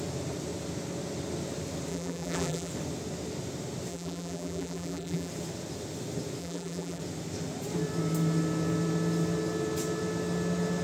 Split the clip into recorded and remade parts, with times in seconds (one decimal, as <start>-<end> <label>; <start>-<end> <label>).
0.0-1.9 recorded; 1.9-2.7 remade; 2.7-3.9 recorded; 3.9-5.3 remade; 5.3-6.4 recorded; 6.4-7.0 remade; 7.0-10.8 recorded